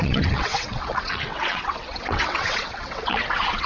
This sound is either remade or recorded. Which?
remade